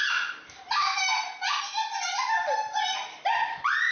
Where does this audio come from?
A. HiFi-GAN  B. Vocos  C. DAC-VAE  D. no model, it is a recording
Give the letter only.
D